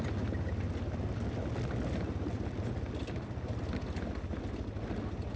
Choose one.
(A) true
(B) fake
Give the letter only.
A